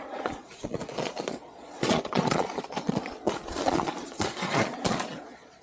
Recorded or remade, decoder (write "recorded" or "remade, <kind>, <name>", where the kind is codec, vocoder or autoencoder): remade, vocoder, Vocos